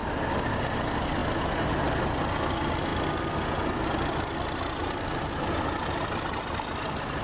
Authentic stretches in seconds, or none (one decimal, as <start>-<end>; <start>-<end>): 0.0-7.2